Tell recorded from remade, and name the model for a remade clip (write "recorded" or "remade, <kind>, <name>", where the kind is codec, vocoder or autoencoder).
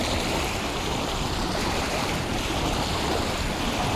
recorded